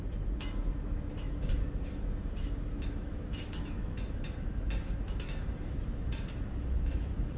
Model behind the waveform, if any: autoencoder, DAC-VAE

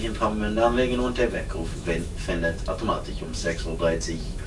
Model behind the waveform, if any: autoencoder, DAC-VAE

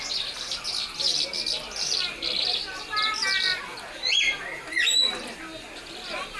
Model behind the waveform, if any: none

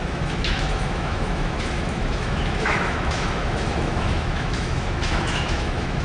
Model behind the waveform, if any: autoencoder, DAC-VAE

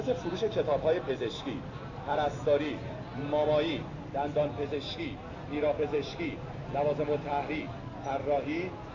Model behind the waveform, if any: none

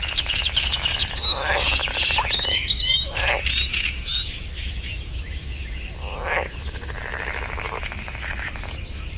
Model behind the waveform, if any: autoencoder, DAC-VAE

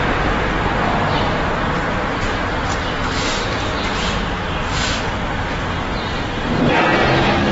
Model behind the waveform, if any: none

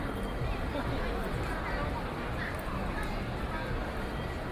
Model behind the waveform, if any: none